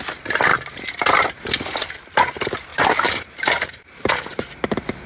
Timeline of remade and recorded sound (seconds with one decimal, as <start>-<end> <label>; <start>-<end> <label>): 0.0-0.5 recorded; 0.5-1.4 remade; 1.4-2.7 recorded; 2.7-4.5 remade; 4.5-5.1 recorded